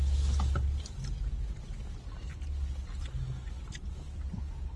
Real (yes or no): yes